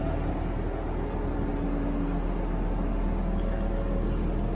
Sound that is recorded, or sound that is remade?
recorded